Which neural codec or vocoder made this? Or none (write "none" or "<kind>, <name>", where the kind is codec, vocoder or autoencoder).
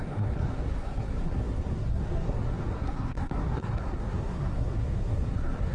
codec, SNAC